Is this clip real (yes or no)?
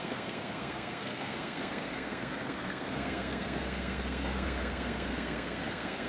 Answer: no